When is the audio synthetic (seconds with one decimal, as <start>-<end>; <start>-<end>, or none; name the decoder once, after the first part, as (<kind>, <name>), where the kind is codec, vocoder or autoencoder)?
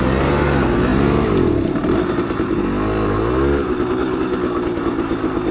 none